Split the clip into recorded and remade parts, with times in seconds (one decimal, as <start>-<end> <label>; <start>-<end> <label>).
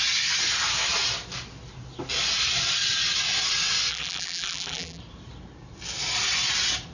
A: 0.0-3.9 recorded; 3.9-5.0 remade; 5.0-6.9 recorded